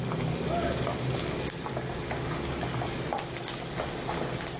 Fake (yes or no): no